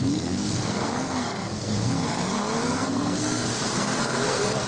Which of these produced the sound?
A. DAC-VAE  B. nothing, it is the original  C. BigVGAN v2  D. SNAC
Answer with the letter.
D